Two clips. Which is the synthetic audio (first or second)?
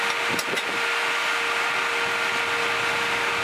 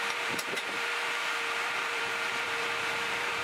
second